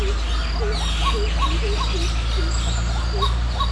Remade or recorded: recorded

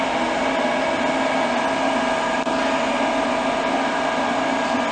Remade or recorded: recorded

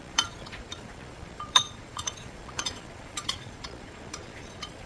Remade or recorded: remade